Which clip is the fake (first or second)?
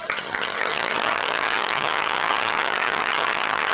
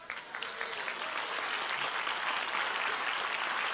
first